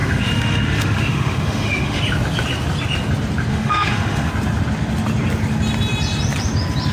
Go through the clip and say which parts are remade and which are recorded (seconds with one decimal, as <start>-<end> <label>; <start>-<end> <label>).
0.0-2.0 remade; 2.0-3.5 recorded; 3.5-4.3 remade; 4.3-6.9 recorded